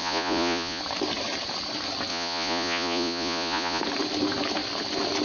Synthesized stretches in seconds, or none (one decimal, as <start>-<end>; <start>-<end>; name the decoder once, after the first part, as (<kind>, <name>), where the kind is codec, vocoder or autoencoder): 0.0-0.8 (vocoder, Vocos); 2.1-3.8